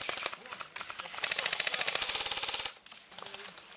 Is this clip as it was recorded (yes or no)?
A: yes